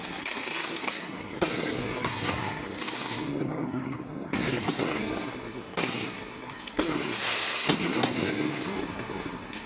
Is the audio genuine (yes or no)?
no